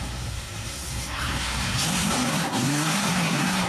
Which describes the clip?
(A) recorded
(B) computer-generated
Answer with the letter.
B